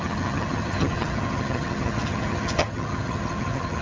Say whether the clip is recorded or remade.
remade